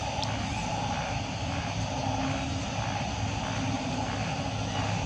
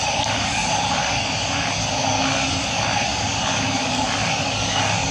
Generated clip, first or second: second